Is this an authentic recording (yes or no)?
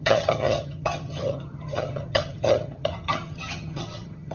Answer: no